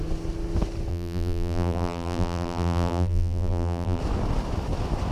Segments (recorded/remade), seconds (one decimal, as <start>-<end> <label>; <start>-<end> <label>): 0.0-0.9 recorded; 0.9-4.0 remade; 4.0-5.1 recorded